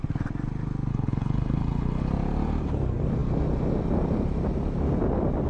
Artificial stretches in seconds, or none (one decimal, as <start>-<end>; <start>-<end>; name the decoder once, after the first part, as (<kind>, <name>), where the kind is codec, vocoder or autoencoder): 0.9-2.1 (codec, HILCodec)